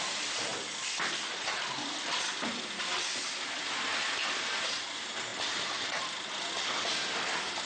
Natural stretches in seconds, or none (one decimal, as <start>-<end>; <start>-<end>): 0.5-3.9